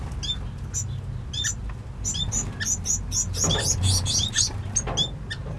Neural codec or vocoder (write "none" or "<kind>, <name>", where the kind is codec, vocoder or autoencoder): none